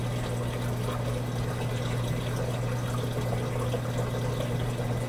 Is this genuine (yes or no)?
yes